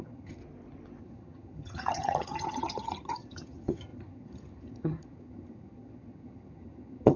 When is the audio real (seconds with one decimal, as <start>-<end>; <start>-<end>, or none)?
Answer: 0.4-1.0